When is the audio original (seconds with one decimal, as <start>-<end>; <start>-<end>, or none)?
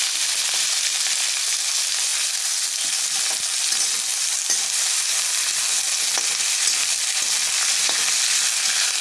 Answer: 0.0-4.4; 5.6-6.3; 7.2-9.0